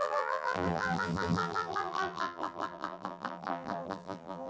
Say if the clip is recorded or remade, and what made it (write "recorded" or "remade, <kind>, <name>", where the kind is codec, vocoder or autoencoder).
remade, vocoder, BigVGAN v2